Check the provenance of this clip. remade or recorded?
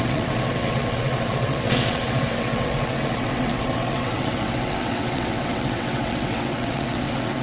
remade